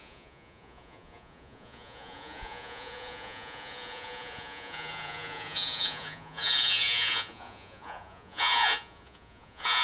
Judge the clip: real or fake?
fake